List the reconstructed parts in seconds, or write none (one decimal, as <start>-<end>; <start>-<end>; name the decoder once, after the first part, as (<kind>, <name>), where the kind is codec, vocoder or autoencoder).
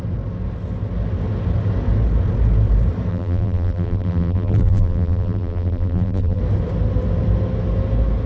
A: 3.1-6.4 (vocoder, BigVGAN v2)